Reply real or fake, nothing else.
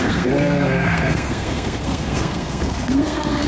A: fake